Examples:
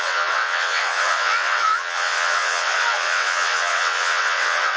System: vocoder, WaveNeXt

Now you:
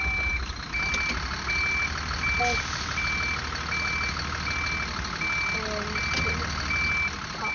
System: none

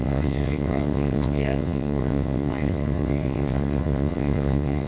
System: vocoder, WaveNeXt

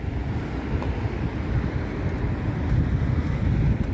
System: none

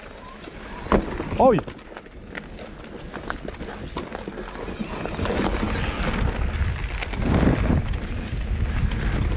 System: none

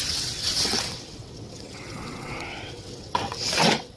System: vocoder, WaveNeXt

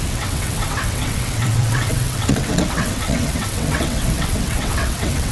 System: vocoder, WaveNeXt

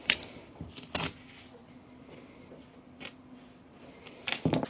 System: none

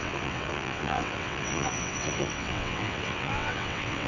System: vocoder, WaveNeXt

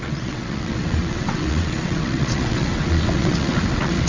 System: vocoder, WaveNeXt